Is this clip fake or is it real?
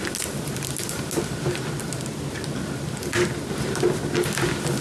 real